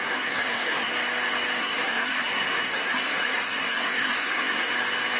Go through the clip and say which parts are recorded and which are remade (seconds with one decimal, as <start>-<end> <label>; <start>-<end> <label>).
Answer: 0.0-0.9 remade; 0.9-1.6 recorded; 1.6-4.7 remade; 4.7-5.2 recorded